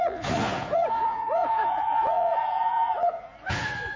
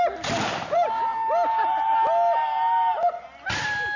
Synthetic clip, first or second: first